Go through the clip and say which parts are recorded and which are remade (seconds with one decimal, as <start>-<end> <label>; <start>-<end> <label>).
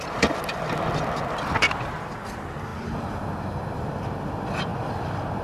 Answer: 0.0-2.7 remade; 2.7-3.7 recorded; 3.7-5.4 remade